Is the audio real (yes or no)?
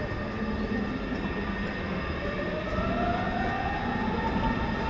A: yes